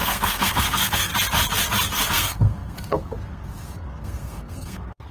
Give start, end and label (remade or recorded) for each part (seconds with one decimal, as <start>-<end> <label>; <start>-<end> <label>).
0.0-1.1 remade; 1.1-2.1 recorded; 2.1-5.1 remade